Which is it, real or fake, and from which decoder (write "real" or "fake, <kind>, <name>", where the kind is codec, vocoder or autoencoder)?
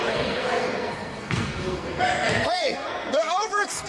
fake, codec, SNAC